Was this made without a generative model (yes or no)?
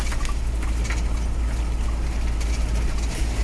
yes